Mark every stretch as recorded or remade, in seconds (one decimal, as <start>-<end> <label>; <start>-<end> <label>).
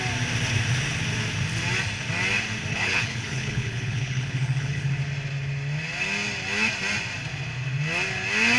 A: 0.0-2.7 recorded; 2.7-4.9 remade; 4.9-8.6 recorded